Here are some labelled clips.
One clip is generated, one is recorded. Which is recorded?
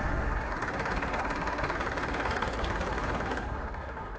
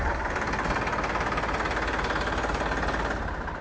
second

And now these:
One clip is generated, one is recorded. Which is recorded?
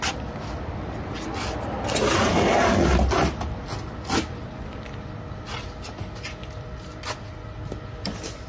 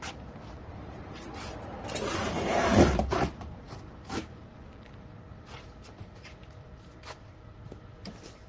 first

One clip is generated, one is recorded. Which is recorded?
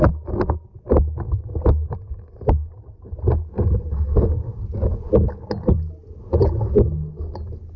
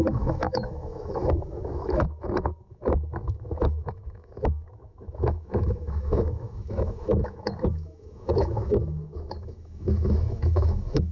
first